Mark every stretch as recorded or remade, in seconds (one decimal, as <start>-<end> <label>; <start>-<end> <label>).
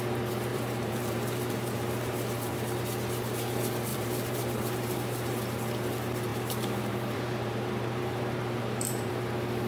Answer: 0.0-0.5 recorded; 0.5-2.8 remade; 2.8-3.9 recorded; 3.9-5.3 remade; 5.3-6.3 recorded; 6.3-9.1 remade; 9.1-9.7 recorded